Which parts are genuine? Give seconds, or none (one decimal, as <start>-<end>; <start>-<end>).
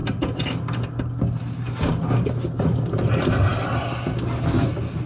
0.0-5.1